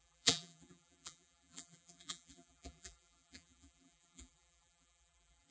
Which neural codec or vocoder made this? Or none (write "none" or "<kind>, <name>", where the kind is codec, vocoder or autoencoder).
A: vocoder, BigVGAN v2